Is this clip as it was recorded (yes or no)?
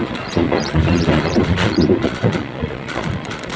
no